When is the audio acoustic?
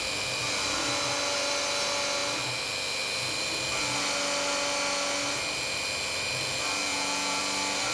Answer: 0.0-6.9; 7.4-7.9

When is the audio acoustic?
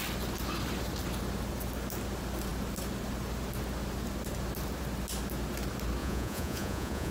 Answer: 0.0-6.0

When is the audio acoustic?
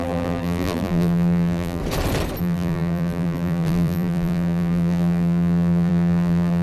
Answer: 1.8-2.4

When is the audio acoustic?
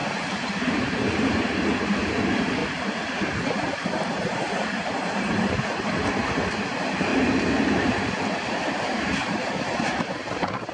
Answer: none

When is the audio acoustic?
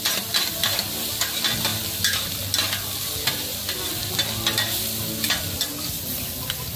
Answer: 1.7-5.4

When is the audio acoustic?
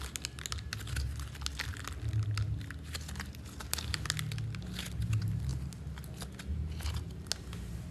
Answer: 0.0-7.9